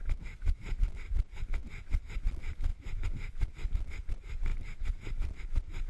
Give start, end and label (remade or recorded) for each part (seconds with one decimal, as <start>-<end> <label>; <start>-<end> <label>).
0.0-5.9 recorded